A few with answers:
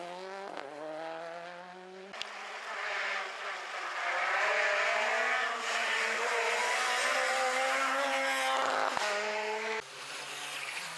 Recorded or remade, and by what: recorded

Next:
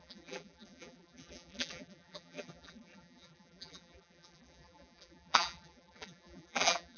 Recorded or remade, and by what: remade, vocoder, BigVGAN v2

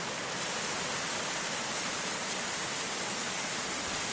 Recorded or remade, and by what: recorded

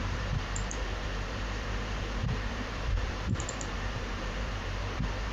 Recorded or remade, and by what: remade, vocoder, BigVGAN v2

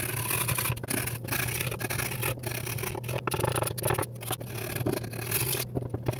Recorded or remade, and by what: recorded